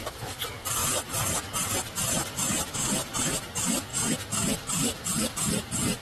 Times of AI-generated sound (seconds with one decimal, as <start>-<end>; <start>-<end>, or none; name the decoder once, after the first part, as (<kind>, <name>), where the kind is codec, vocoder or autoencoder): none